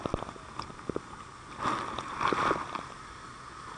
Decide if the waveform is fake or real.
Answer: real